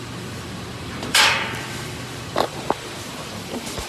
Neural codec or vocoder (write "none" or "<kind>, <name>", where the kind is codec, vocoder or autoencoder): vocoder, BigVGAN v2